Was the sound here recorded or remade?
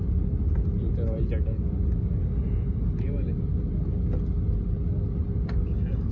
recorded